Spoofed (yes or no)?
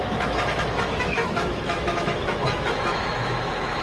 yes